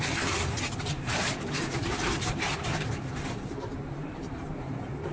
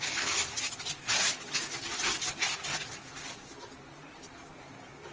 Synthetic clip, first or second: first